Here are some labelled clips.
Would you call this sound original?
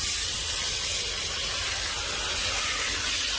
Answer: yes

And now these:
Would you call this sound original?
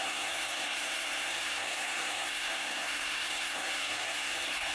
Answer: no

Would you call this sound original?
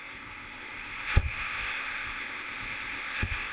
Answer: no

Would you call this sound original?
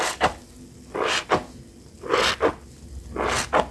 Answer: yes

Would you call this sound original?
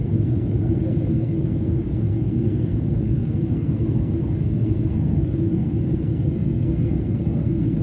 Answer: no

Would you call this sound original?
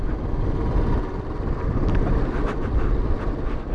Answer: yes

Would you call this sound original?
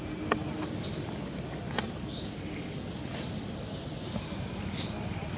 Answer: yes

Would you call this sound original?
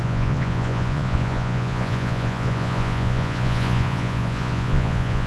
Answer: no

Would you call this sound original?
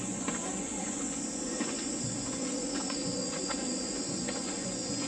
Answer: no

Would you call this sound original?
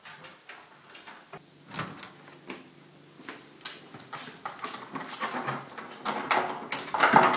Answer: yes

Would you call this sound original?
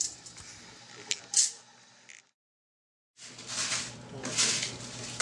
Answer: yes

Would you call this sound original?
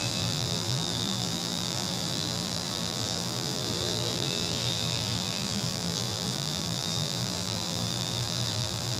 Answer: no